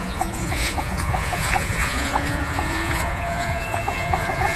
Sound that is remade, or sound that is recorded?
remade